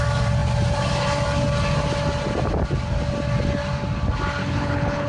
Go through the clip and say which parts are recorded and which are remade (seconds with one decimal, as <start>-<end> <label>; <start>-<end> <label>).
0.0-4.4 recorded; 4.4-5.1 remade